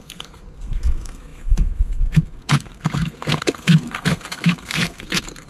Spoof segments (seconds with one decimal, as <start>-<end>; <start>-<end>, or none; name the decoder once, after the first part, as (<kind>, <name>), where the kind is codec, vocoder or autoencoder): 0.0-5.5 (codec, SNAC)